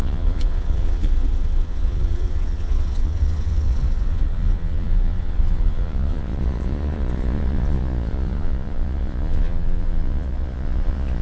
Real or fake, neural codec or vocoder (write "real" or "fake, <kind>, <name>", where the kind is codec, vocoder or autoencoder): fake, vocoder, Vocos